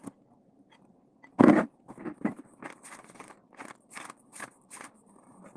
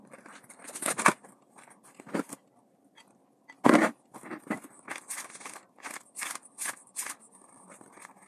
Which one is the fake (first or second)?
first